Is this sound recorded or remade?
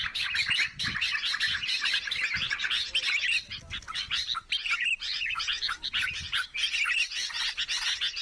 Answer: recorded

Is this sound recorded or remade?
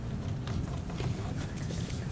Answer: recorded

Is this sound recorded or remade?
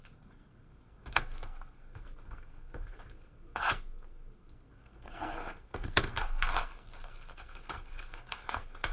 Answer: remade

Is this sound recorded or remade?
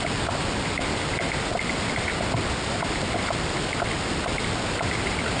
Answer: recorded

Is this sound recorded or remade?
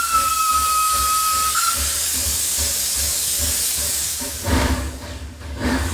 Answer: remade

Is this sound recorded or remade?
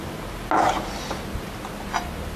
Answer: recorded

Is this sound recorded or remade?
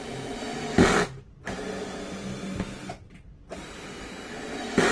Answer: recorded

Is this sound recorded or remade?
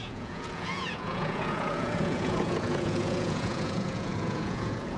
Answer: remade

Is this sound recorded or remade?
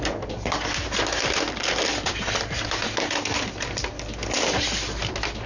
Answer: recorded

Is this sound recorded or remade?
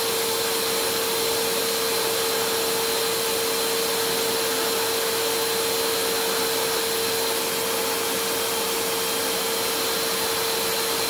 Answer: recorded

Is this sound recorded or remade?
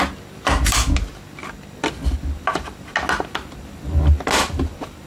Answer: recorded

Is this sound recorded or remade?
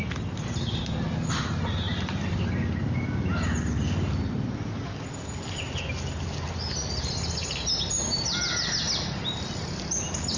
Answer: recorded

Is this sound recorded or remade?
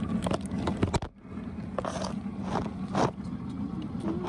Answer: recorded